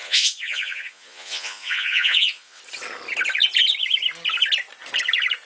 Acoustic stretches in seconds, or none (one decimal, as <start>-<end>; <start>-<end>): 2.6-5.4